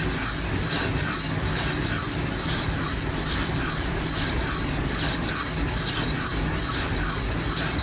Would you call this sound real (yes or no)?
yes